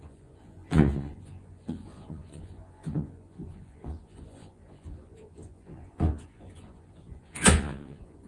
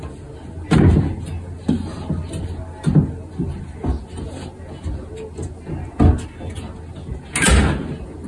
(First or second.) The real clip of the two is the second